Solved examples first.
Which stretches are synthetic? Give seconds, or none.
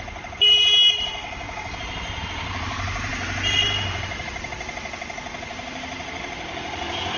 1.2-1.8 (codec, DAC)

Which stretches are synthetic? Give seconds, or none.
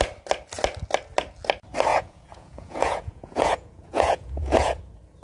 1.9-4.8 (vocoder, Vocos)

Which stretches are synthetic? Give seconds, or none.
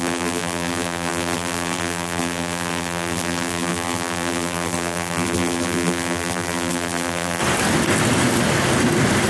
0.0-7.4 (vocoder, BigVGAN v2)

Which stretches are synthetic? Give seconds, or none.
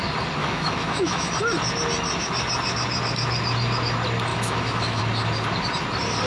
0.4-1.3 (autoencoder, DAC-VAE); 4.3-5.0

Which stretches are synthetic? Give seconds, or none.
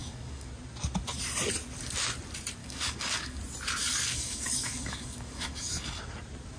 0.0-0.5 (codec, DAC); 2.6-3.4; 3.8-6.0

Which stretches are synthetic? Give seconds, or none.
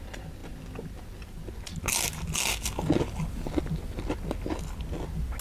none